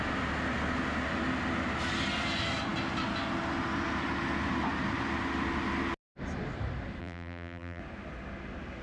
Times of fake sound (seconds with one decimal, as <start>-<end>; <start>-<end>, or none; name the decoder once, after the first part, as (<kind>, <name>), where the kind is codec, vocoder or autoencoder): 7.0-7.8 (vocoder, BigVGAN v2)